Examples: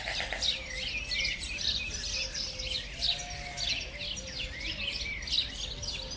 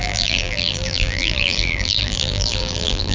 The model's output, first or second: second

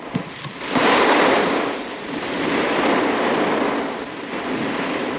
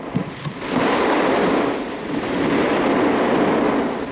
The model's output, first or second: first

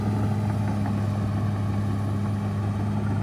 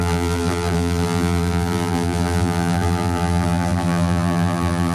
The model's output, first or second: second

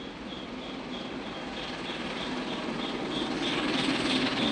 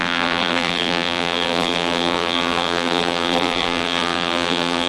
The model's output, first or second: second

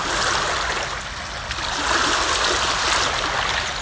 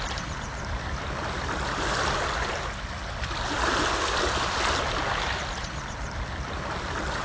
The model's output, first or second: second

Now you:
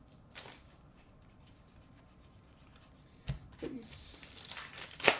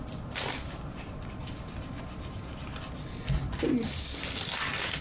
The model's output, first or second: first